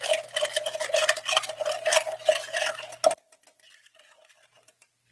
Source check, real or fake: real